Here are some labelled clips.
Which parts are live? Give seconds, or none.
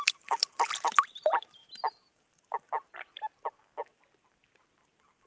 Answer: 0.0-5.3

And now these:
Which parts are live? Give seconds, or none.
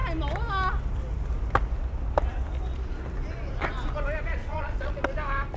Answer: 0.0-4.4; 5.0-5.6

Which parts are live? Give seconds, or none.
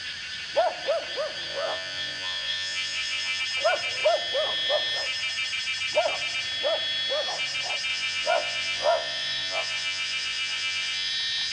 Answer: 0.0-1.5; 3.4-7.9; 11.1-11.5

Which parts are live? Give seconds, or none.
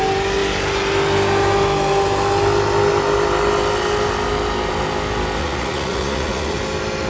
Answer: 0.0-5.4; 6.6-7.1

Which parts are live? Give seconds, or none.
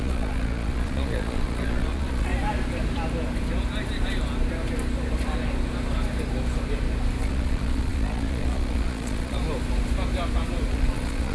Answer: 2.3-7.2; 9.4-10.7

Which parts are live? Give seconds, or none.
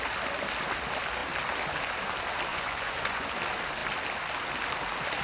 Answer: 0.0-2.5; 3.3-5.2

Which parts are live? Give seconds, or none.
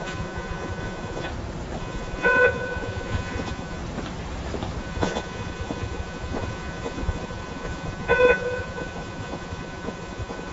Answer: 1.3-1.8; 3.8-4.8